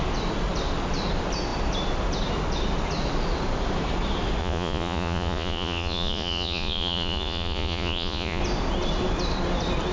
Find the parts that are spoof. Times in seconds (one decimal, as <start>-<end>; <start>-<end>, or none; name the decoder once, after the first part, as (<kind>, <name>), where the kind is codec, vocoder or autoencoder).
4.4-8.4 (vocoder, Vocos)